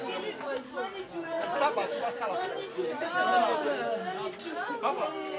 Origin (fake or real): real